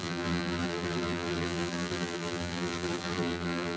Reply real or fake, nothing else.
fake